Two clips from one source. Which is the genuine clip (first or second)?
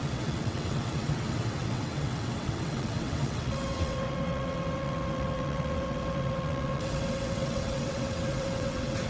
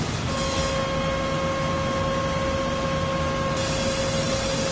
second